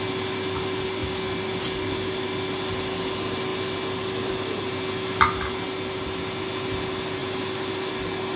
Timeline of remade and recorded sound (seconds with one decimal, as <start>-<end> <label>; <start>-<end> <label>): 0.0-8.4 recorded